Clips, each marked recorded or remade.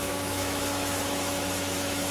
remade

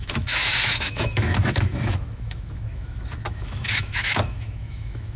remade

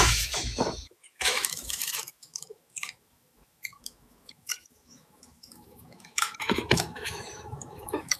remade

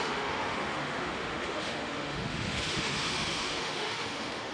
remade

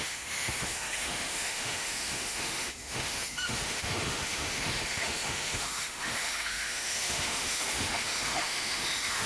remade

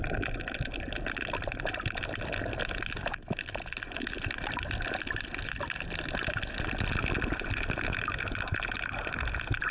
recorded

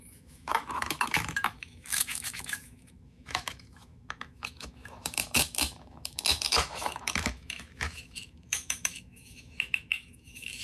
remade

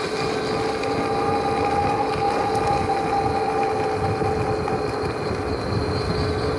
recorded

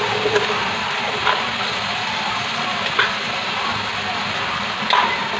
recorded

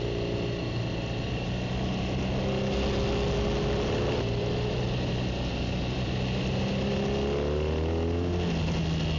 recorded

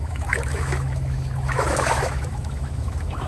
remade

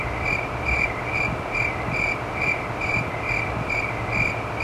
recorded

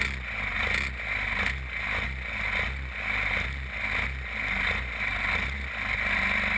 recorded